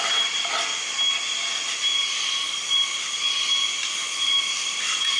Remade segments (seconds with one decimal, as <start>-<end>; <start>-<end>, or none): 1.9-3.2; 4.0-5.2